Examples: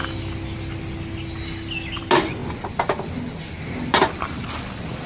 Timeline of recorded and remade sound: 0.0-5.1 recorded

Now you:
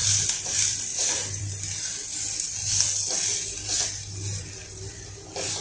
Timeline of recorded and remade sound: 0.0-1.4 remade; 1.4-4.6 recorded; 4.6-5.6 remade

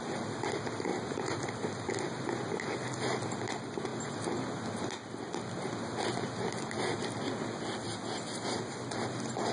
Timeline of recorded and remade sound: 0.0-0.9 recorded; 0.9-2.2 remade; 2.2-9.5 recorded

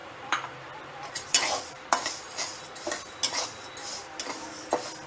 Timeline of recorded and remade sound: 0.0-2.6 remade; 2.6-5.1 recorded